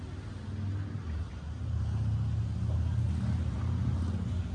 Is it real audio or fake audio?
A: real